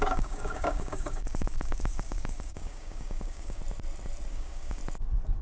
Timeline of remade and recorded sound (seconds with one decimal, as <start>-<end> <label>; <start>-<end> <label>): 0.0-3.6 remade; 3.6-4.3 recorded; 4.3-4.8 remade; 4.8-5.4 recorded